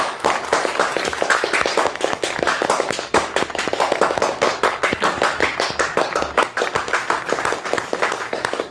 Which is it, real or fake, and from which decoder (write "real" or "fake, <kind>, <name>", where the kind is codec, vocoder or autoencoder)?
fake, codec, DAC